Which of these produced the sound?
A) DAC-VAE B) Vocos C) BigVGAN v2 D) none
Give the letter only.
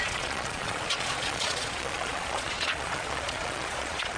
B